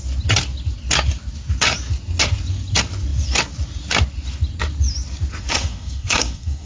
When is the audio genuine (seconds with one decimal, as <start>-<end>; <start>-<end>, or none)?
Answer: 0.0-5.4